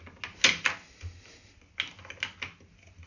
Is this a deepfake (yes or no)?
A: no